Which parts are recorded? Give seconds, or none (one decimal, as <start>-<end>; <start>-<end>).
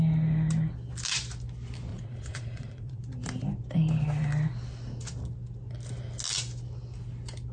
0.0-1.9; 3.0-7.5